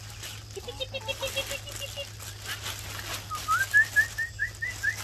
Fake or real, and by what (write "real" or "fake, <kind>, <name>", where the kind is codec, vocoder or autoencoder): real